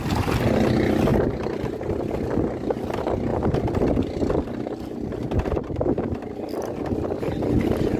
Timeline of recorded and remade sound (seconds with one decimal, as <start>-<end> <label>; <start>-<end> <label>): 0.0-8.0 recorded